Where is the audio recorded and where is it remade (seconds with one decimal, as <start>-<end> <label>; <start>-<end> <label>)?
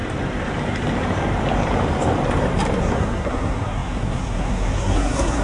0.0-2.8 recorded; 2.8-5.4 remade